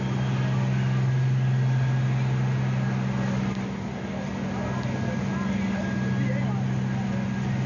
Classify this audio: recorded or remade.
recorded